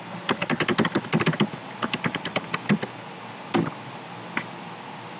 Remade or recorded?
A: recorded